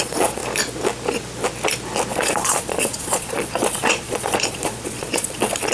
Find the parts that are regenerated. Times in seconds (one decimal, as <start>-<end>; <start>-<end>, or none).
0.0-0.4; 2.1-5.7